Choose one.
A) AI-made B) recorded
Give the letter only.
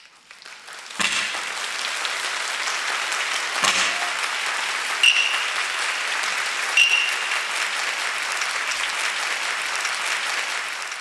B